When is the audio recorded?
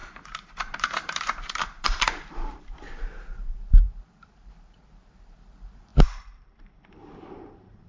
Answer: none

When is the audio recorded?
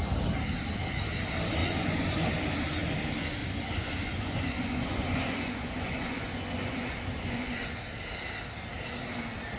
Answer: 0.0-1.6; 2.3-3.4; 7.8-9.6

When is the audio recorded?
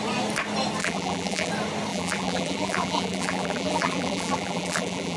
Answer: 0.0-0.8; 1.5-1.9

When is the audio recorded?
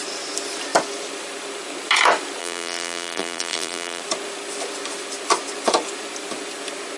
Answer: 0.0-2.4; 4.0-7.0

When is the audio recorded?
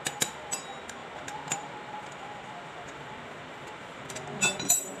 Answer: 0.0-5.0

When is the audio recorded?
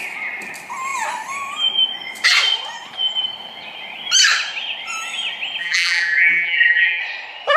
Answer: 0.0-5.6; 7.0-7.6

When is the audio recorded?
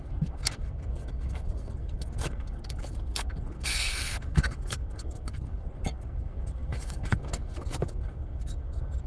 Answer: none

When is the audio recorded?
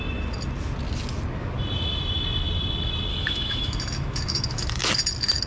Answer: 0.0-3.1; 4.8-5.5